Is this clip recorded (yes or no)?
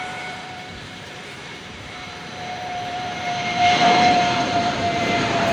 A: no